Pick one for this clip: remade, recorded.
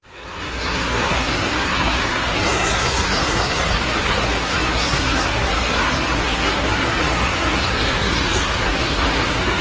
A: remade